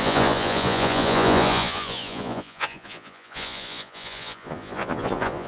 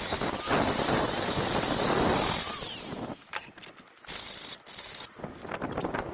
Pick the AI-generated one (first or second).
first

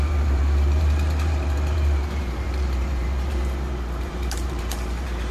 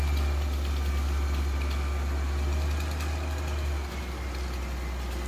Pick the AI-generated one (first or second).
first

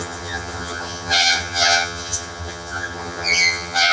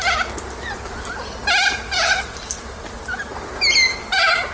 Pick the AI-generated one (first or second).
first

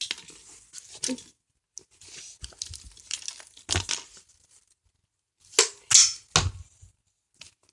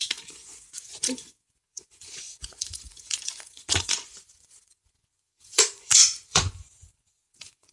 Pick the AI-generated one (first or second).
second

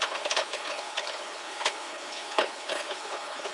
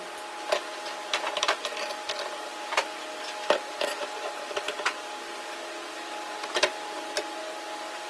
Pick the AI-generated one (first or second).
first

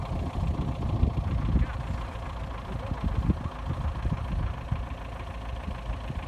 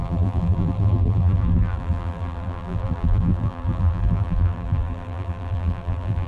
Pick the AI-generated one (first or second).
second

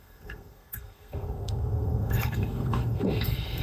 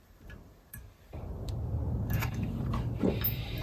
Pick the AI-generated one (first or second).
first